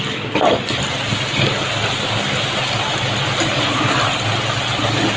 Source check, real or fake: real